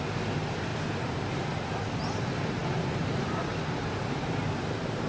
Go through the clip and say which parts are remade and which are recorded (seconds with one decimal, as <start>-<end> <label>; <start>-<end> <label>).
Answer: 0.0-0.7 remade; 0.7-2.0 recorded; 2.0-5.1 remade